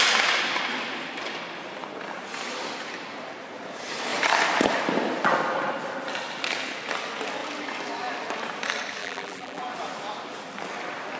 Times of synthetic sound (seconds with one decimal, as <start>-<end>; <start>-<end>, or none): 9.0-9.6